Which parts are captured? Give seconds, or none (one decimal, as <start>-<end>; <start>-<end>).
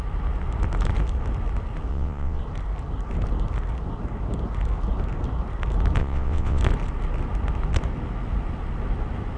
0.0-1.9; 2.4-6.0; 6.6-9.4